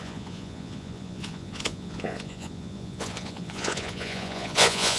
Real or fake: fake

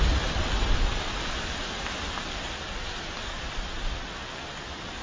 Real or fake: real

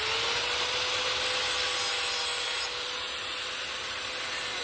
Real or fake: real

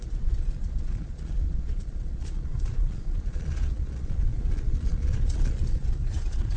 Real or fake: fake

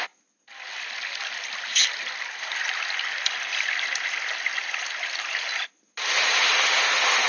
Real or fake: real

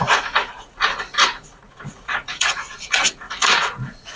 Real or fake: fake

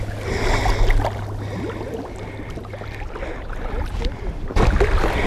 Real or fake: real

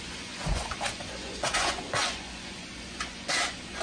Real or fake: fake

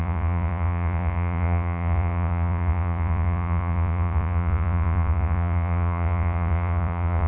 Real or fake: fake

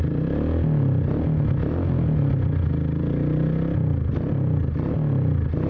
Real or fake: real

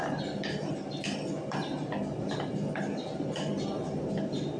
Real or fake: real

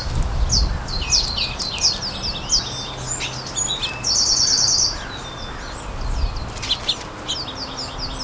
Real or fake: real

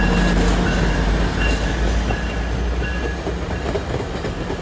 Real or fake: real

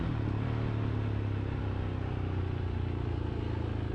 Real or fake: real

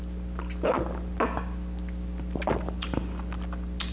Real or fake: real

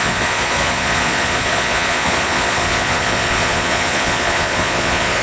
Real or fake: fake